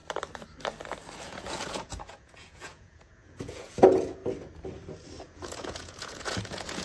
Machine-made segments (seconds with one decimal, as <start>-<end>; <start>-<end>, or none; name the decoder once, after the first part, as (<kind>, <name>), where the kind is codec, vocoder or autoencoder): 1.2-4.2 (vocoder, Vocos); 5.2-6.8